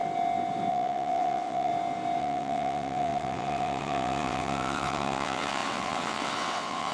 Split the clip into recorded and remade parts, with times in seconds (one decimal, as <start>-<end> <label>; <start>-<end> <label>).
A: 0.0-0.7 recorded; 0.7-1.7 remade; 1.7-2.2 recorded; 2.2-6.9 remade